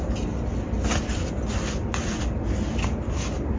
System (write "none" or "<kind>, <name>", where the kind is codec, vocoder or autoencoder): none